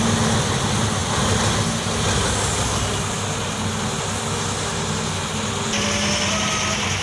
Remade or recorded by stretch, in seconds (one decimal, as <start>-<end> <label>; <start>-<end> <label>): 0.0-7.0 recorded

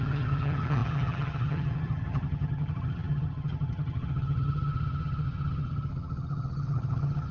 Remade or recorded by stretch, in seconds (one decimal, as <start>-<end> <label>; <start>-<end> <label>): 0.0-7.3 remade